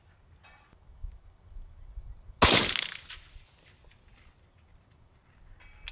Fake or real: real